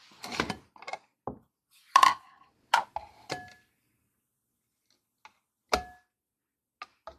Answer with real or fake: real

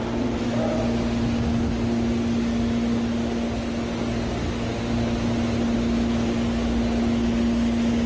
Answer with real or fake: real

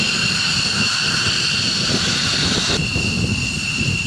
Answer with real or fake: real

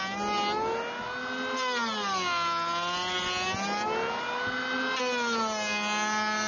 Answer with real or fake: real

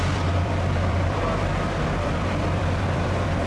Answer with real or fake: fake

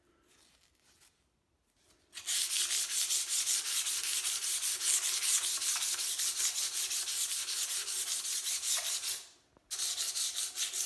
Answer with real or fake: real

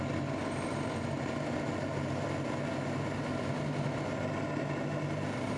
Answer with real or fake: real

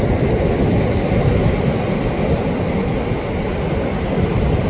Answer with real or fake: real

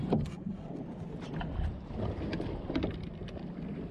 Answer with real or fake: real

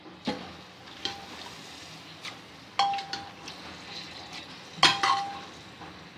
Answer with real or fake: real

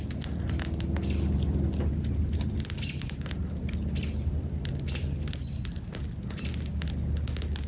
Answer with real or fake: real